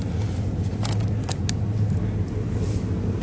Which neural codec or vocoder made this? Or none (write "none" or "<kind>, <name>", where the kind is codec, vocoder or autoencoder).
none